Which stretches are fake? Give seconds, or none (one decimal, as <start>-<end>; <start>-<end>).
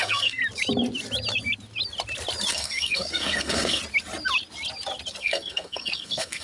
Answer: 0.0-0.4; 2.5-3.8; 5.2-6.4